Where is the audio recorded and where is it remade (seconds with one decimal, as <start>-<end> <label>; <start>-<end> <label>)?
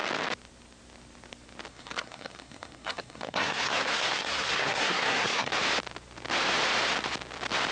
0.0-1.7 recorded; 1.7-5.5 remade; 5.5-7.7 recorded